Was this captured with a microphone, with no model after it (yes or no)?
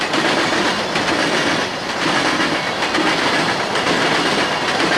yes